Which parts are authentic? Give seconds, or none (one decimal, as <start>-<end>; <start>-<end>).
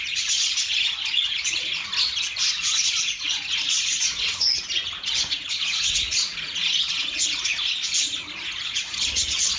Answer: 1.9-2.5; 7.5-8.2